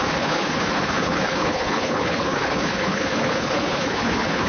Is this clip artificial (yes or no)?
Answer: yes